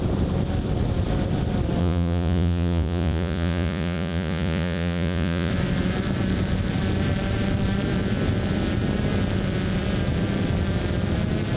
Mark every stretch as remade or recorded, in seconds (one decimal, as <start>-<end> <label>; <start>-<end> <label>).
0.0-1.8 recorded; 1.8-5.5 remade; 5.5-11.6 recorded